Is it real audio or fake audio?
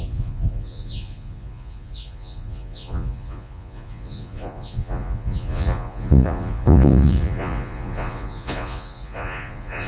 fake